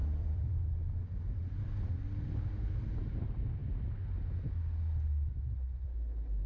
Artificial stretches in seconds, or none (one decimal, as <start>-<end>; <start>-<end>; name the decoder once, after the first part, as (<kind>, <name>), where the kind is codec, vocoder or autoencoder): 0.0-2.0 (vocoder, BigVGAN v2)